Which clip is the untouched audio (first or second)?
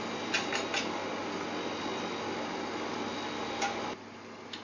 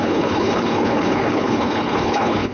first